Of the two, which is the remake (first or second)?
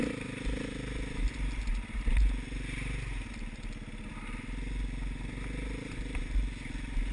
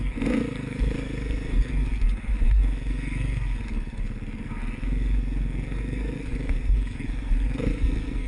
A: second